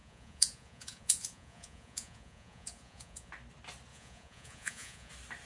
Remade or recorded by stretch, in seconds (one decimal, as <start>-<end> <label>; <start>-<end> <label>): 0.0-3.3 remade; 3.3-3.9 recorded; 3.9-5.1 remade; 5.1-5.5 recorded